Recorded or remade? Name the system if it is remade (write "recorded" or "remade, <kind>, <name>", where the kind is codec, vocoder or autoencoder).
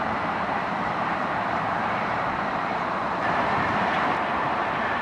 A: remade, vocoder, BigVGAN v2